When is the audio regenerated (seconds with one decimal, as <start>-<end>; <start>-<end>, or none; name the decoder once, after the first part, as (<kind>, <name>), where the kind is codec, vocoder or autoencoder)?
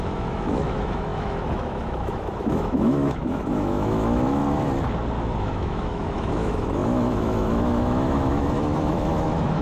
0.0-4.4 (autoencoder, DAC-VAE); 5.4-9.6